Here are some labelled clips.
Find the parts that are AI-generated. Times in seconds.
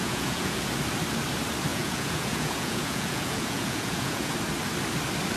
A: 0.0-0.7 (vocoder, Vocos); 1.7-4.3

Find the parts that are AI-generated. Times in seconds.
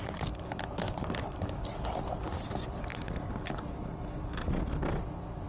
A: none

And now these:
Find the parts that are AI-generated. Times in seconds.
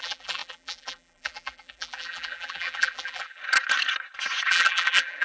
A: 0.0-3.4 (vocoder, BigVGAN v2); 4.5-5.2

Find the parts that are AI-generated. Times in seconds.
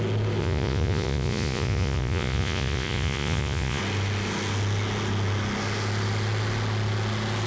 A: 0.4-3.8 (vocoder, Vocos)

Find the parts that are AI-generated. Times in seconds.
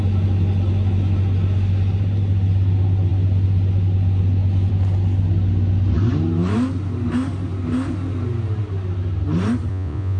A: 9.7-10.2 (vocoder, Vocos)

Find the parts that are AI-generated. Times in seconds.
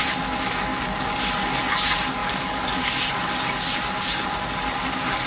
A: 0.7-1.3 (codec, DAC); 2.2-3.1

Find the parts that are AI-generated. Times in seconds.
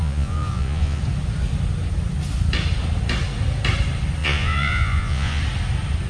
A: 0.0-1.0 (vocoder, Vocos); 4.2-5.4